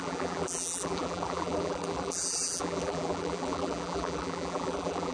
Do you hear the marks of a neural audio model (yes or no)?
yes